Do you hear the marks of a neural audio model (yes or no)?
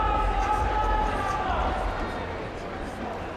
no